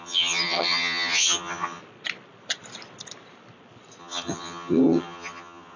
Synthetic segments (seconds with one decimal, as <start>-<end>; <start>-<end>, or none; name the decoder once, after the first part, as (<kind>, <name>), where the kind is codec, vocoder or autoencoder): 0.0-1.8 (vocoder, HiFi-GAN); 4.0-5.8